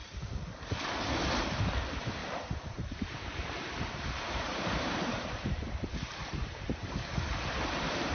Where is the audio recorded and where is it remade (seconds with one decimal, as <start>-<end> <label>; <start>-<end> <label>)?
0.0-2.2 recorded; 2.2-7.1 remade; 7.1-8.1 recorded